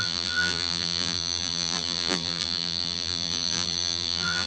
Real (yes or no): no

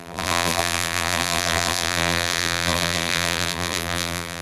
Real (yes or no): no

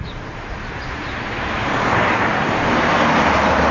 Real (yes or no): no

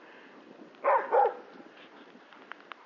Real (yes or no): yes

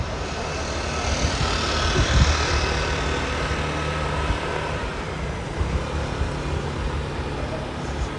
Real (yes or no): yes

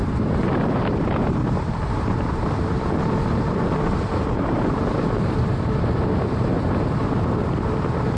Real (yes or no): no